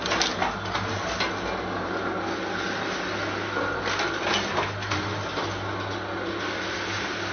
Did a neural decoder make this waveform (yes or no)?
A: no